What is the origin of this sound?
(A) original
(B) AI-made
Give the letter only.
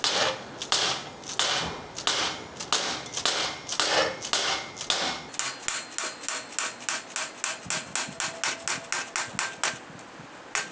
A